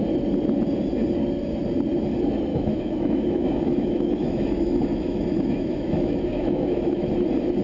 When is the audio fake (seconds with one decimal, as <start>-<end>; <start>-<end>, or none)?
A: 2.5-7.1